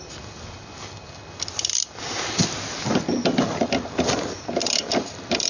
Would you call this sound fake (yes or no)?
no